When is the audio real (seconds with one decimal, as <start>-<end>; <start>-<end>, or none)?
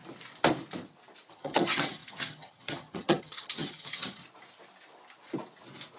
0.0-1.3; 4.2-6.0